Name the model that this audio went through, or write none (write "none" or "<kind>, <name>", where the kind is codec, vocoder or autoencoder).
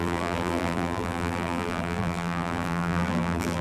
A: vocoder, BigVGAN v2